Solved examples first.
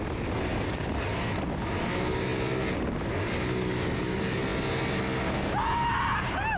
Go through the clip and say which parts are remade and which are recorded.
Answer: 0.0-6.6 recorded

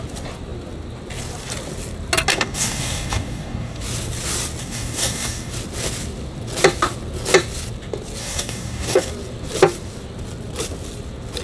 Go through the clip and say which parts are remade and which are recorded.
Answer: 0.0-2.3 recorded; 2.3-3.8 remade; 3.8-4.6 recorded; 4.6-5.5 remade; 5.5-8.2 recorded; 8.2-9.1 remade; 9.1-11.4 recorded

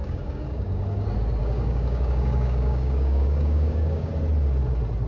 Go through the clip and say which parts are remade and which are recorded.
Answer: 0.0-0.8 remade; 0.8-1.4 recorded; 1.4-4.1 remade; 4.1-5.1 recorded